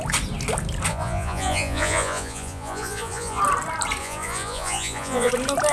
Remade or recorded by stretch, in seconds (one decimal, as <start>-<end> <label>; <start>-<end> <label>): 0.0-0.9 recorded; 0.9-3.4 remade; 3.4-4.0 recorded; 4.0-5.3 remade; 5.3-5.7 recorded